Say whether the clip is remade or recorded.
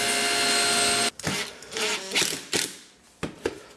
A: recorded